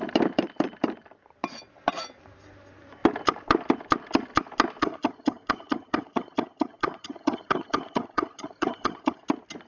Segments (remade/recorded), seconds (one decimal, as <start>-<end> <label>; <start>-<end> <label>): 0.0-4.8 recorded; 4.8-9.2 remade; 9.2-9.7 recorded